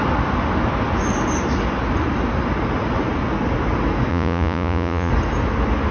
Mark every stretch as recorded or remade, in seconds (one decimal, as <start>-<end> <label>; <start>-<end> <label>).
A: 0.0-4.1 recorded; 4.1-5.1 remade; 5.1-5.9 recorded